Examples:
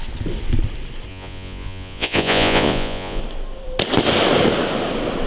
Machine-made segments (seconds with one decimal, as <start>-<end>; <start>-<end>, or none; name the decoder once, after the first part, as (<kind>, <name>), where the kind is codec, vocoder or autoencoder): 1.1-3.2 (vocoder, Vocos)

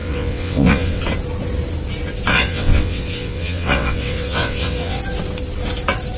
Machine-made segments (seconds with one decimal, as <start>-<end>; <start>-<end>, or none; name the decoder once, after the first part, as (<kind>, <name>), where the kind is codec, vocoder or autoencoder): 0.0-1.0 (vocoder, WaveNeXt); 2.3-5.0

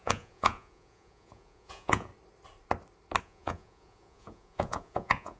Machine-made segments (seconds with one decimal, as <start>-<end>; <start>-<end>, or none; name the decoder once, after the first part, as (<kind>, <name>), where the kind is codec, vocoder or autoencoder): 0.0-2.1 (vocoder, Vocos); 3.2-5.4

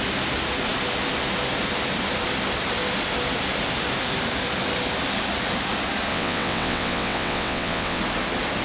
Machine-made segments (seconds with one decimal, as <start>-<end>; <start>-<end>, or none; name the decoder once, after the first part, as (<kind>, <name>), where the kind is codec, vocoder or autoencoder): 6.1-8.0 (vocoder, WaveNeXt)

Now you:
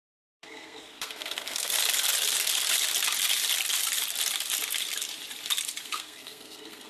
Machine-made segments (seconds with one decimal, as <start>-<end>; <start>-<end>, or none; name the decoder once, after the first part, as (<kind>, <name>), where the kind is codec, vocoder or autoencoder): 0.0-1.7 (codec, SNAC); 5.8-6.9

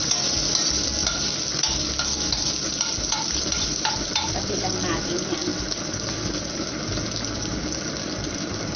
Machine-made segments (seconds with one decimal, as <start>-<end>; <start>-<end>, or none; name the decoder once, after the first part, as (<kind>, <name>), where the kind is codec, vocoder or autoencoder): 2.7-4.8 (vocoder, BigVGAN v2); 5.5-6.7

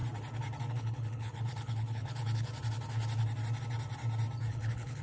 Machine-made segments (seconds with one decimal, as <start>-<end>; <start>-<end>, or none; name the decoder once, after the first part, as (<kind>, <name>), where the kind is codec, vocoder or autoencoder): 0.7-2.5 (codec, HILCodec); 4.5-5.0